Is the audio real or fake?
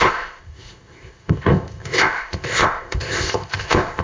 fake